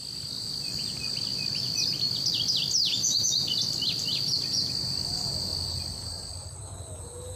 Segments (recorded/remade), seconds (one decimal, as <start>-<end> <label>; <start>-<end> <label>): 0.0-7.4 recorded